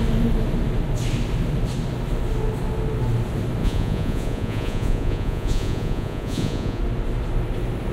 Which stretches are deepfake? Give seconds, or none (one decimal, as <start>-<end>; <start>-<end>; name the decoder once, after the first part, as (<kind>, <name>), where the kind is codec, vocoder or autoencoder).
3.6-6.8 (vocoder, Vocos)